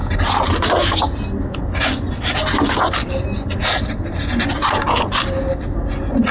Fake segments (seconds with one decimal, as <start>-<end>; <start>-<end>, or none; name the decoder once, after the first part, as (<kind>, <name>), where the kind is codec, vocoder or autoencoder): none